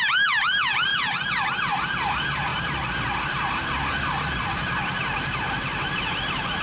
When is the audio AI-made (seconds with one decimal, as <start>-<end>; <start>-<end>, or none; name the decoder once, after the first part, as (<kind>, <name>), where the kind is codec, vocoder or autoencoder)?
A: none